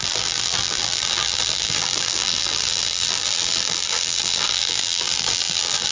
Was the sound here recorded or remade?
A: remade